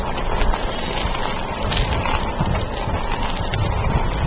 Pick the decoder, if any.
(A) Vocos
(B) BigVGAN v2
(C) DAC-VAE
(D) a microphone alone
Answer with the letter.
D